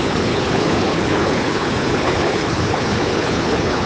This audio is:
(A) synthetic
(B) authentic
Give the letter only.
A